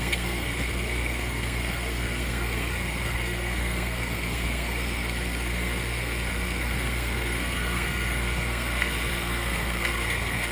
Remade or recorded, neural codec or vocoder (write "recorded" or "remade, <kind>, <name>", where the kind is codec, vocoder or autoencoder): remade, codec, SNAC